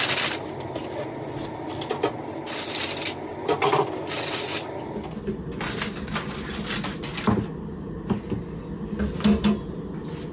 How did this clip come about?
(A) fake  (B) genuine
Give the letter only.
B